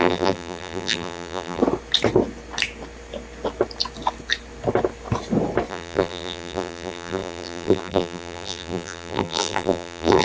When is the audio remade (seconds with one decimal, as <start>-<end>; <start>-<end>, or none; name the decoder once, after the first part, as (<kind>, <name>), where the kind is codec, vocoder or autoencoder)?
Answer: 0.0-1.6 (vocoder, BigVGAN v2); 5.7-10.2